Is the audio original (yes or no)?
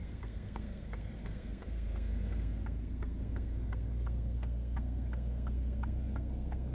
no